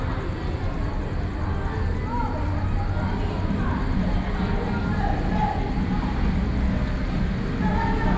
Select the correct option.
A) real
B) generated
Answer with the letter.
A